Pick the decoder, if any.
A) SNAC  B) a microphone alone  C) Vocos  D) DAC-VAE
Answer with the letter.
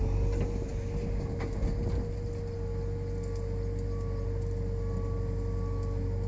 B